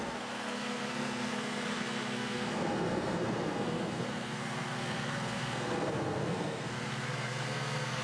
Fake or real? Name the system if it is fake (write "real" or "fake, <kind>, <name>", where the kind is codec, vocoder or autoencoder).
fake, codec, SNAC